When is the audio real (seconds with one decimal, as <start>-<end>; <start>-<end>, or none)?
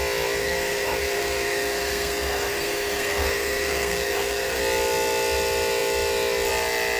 0.0-0.4; 4.6-7.0